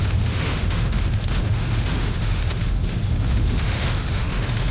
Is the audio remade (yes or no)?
yes